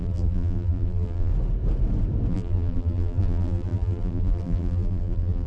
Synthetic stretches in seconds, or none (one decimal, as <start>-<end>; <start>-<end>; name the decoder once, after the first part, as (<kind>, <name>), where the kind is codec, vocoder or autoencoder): 0.0-1.3 (vocoder, BigVGAN v2); 2.3-5.5